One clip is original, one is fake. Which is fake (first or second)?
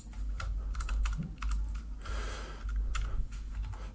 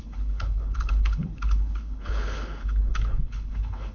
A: second